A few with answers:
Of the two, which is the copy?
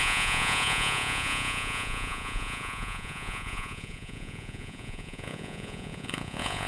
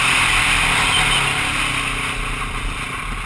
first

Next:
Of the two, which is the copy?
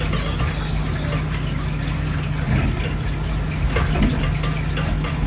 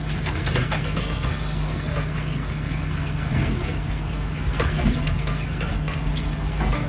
second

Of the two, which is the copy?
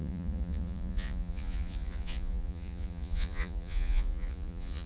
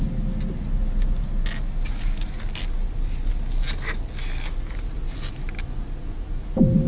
first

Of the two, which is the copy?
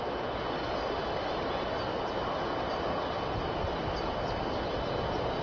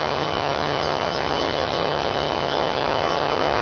second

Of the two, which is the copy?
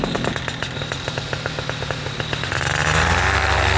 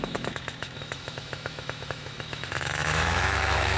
second